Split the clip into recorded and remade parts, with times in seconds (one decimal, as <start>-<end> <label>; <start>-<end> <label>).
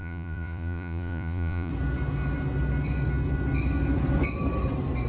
0.0-1.7 remade; 1.7-5.1 recorded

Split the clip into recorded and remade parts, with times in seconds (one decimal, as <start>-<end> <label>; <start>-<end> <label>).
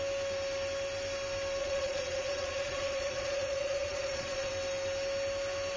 0.0-1.6 recorded; 1.6-4.5 remade; 4.5-5.8 recorded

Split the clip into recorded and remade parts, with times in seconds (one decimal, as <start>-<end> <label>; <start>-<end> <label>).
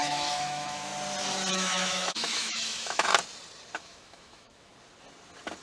0.0-0.9 remade; 0.9-1.5 recorded; 1.5-3.1 remade; 3.1-3.8 recorded; 3.8-4.7 remade; 4.7-5.6 recorded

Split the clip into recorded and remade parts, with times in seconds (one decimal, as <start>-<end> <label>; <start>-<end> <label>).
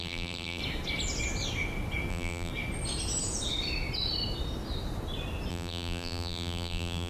0.0-0.6 remade; 0.6-2.1 recorded; 2.1-2.5 remade; 2.5-5.5 recorded; 5.5-7.1 remade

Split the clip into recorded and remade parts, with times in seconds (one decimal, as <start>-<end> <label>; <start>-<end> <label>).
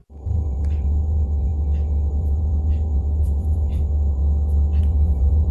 0.0-1.5 remade; 1.5-2.1 recorded; 2.1-4.2 remade; 4.2-4.8 recorded; 4.8-5.5 remade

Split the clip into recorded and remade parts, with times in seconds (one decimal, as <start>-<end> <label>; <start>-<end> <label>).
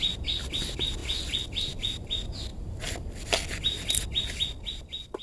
0.0-5.2 recorded